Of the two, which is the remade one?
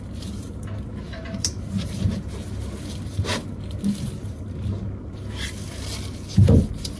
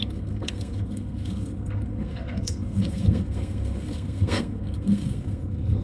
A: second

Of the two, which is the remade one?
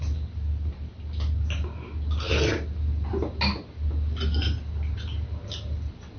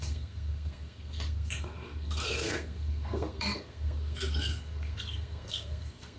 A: second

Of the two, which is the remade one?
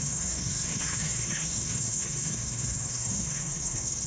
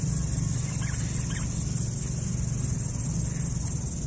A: first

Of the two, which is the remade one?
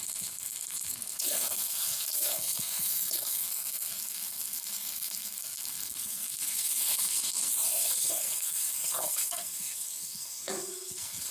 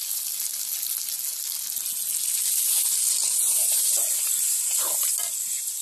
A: first